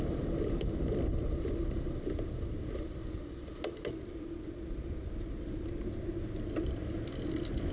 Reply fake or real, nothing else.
real